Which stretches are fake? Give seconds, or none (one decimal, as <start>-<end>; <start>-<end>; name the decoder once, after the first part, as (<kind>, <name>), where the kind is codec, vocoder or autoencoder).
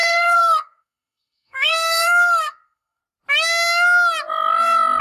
0.0-3.0 (codec, SNAC)